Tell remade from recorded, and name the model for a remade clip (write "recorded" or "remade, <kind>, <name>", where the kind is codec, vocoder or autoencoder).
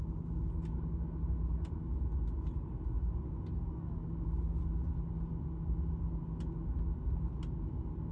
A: recorded